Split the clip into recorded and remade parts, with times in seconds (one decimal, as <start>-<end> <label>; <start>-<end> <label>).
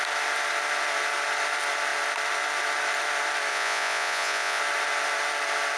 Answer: 0.0-3.5 recorded; 3.5-4.6 remade; 4.6-5.8 recorded